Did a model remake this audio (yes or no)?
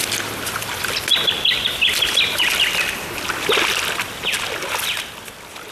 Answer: no